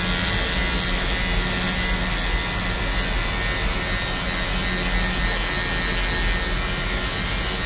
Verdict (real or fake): real